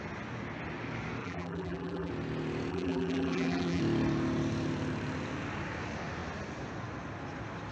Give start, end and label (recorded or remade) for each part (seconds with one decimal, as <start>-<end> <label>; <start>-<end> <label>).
0.0-1.2 recorded; 1.2-2.1 remade; 2.1-2.7 recorded; 2.7-3.8 remade; 3.8-7.7 recorded